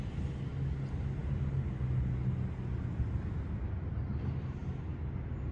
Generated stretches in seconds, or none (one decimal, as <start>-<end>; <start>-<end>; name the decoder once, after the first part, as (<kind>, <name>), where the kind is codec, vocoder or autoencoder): none